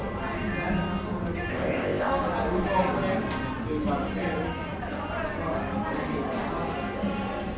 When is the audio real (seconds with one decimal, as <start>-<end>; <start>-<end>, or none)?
0.0-1.5; 2.1-7.6